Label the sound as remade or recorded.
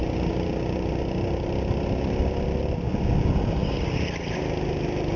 recorded